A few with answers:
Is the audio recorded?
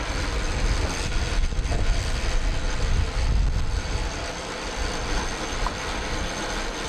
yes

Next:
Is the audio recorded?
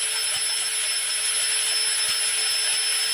yes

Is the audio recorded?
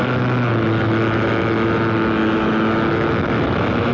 no